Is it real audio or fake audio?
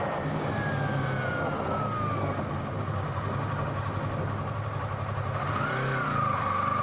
real